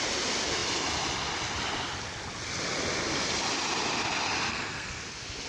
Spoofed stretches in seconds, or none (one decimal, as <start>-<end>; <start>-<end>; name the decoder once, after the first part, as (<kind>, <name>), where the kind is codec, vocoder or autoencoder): 4.5-5.0 (codec, SNAC)